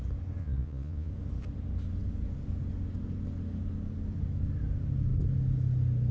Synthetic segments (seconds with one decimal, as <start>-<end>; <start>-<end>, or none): 0.4-1.1